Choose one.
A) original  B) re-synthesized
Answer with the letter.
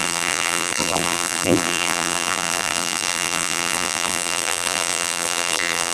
B